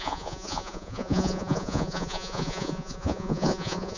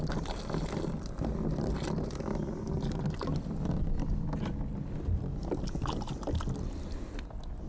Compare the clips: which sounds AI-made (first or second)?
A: first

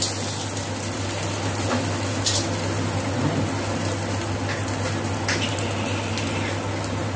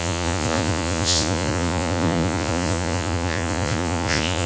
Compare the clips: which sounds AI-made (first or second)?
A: second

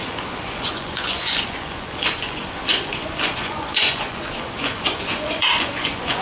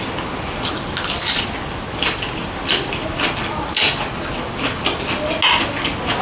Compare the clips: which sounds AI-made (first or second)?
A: first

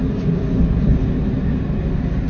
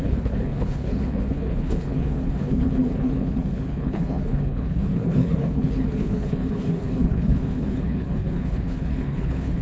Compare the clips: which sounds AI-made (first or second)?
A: second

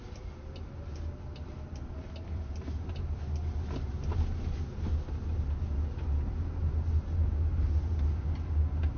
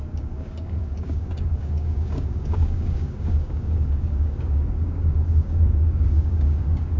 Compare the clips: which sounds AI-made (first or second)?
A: second